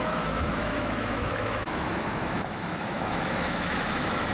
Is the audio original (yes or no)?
no